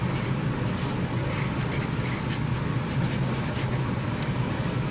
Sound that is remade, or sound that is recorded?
recorded